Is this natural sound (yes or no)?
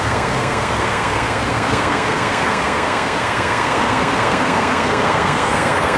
no